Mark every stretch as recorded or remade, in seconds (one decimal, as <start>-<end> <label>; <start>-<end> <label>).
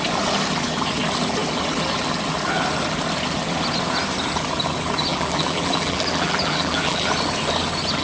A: 0.0-5.1 recorded; 5.1-7.1 remade; 7.1-8.0 recorded